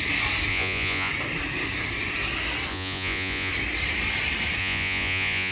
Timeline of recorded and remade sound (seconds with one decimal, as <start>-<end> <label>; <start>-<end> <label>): 0.0-0.5 recorded; 0.5-1.1 remade; 1.1-2.7 recorded; 2.7-3.5 remade; 3.5-4.6 recorded; 4.6-5.5 remade